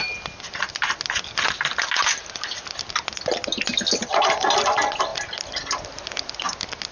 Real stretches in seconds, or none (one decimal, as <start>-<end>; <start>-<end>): 0.0-6.9